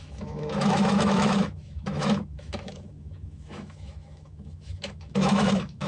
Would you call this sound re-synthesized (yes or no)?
yes